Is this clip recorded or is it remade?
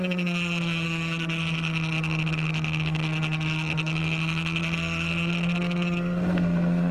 remade